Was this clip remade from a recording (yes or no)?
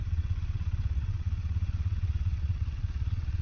yes